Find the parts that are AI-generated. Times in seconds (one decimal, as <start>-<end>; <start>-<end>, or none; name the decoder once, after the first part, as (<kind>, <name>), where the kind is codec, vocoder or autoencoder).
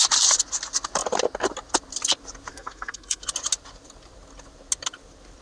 2.5-3.2 (codec, SNAC)